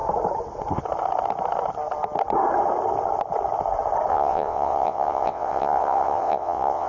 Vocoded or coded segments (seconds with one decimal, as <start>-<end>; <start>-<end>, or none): 4.1-6.9

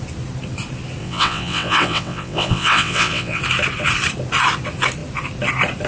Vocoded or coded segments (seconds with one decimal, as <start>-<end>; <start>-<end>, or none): 1.0-3.4

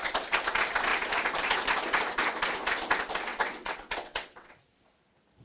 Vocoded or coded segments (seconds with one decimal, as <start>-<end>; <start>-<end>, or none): 3.3-4.5

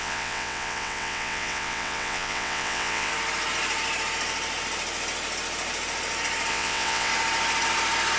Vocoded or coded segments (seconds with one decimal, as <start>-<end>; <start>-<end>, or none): 0.0-3.1; 6.5-7.1

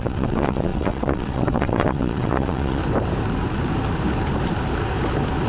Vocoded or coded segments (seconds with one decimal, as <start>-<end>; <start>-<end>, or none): 0.0-2.8

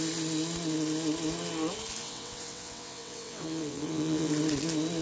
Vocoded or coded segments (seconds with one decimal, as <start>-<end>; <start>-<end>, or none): 2.0-4.3

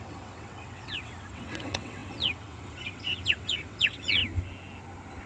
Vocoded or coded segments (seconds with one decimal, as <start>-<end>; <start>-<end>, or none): 0.0-4.2

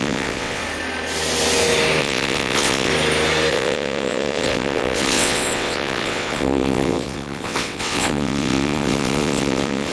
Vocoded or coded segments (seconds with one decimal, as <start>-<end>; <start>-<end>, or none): 0.0-0.6; 2.0-2.9; 3.5-9.9